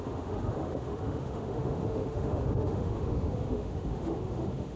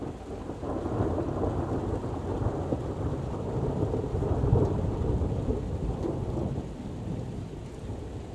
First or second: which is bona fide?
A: second